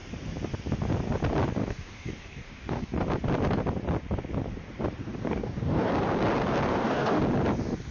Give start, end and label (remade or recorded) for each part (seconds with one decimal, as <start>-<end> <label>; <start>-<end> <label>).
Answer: 0.0-1.6 recorded; 1.6-3.0 remade; 3.0-5.0 recorded; 5.0-5.9 remade; 5.9-6.7 recorded; 6.7-7.2 remade; 7.2-7.9 recorded